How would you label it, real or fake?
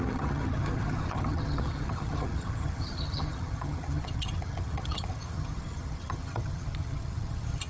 fake